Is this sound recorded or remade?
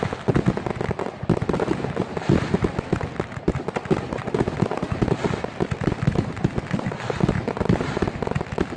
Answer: recorded